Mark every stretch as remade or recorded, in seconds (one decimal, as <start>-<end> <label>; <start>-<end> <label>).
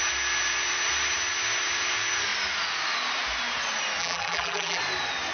0.0-4.0 recorded; 4.0-4.8 remade; 4.8-5.3 recorded